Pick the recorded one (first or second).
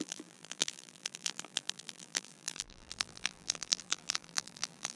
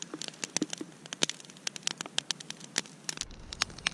second